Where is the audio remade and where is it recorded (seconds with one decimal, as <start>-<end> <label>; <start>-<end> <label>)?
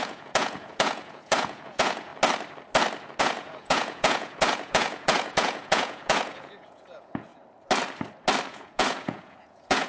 0.0-2.1 remade; 2.1-3.2 recorded; 3.2-7.3 remade; 7.3-8.5 recorded; 8.5-9.9 remade